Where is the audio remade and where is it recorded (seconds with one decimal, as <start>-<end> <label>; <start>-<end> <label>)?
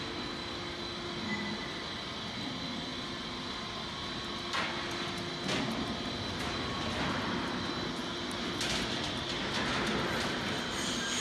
0.0-11.2 recorded